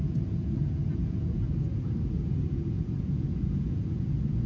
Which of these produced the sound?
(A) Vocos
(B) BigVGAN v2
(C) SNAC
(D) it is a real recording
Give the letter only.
A